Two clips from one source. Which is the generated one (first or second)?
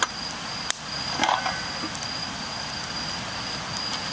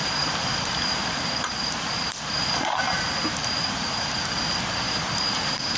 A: second